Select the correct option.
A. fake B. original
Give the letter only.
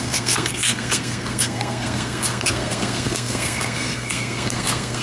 A